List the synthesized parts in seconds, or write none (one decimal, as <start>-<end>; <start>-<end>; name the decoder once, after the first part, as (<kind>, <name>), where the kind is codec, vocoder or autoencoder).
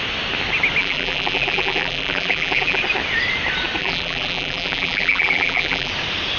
0.8-2.8 (vocoder, BigVGAN v2); 3.8-5.9